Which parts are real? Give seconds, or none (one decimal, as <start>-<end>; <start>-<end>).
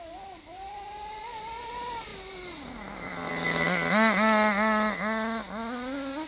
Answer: 0.0-6.3